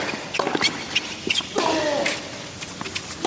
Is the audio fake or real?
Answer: real